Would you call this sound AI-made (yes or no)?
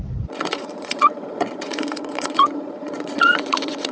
yes